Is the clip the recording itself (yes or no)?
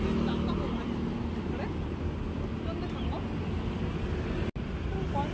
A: yes